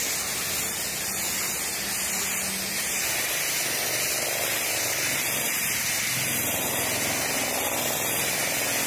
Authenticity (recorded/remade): recorded